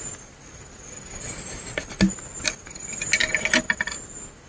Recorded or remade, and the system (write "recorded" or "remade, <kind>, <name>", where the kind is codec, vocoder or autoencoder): recorded